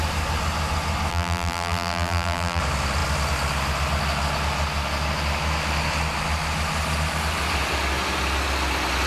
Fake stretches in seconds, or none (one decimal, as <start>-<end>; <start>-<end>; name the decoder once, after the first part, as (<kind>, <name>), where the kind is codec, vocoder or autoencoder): 1.1-2.6 (vocoder, BigVGAN v2)